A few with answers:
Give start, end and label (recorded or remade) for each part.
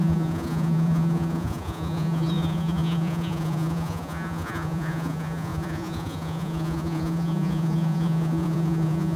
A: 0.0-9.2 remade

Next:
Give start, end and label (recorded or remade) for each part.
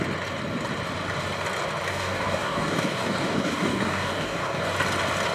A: 0.0-1.9 recorded; 1.9-4.7 remade; 4.7-5.3 recorded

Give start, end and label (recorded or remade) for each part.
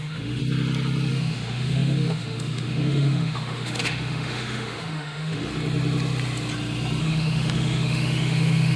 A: 0.0-0.4 remade; 0.4-1.1 recorded; 1.1-5.5 remade; 5.5-7.0 recorded; 7.0-8.8 remade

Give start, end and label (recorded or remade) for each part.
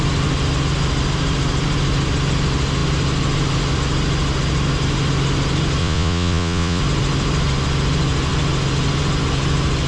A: 0.0-5.8 recorded; 5.8-6.8 remade; 6.8-9.9 recorded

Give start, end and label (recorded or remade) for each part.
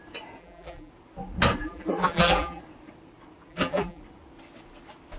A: 0.0-0.4 recorded; 0.4-0.9 remade; 0.9-1.6 recorded; 1.6-2.6 remade; 2.6-3.5 recorded; 3.5-4.0 remade; 4.0-5.2 recorded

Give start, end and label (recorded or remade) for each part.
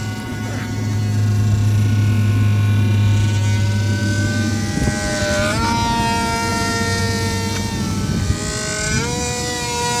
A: 0.0-6.5 recorded; 6.5-7.0 remade; 7.0-10.0 recorded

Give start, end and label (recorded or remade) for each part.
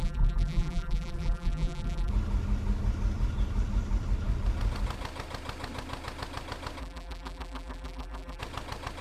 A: 0.0-2.1 remade; 2.1-6.8 recorded; 6.8-8.4 remade; 8.4-9.0 recorded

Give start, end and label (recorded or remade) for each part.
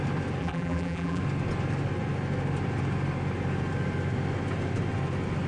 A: 0.0-0.4 recorded; 0.4-1.2 remade; 1.2-5.5 recorded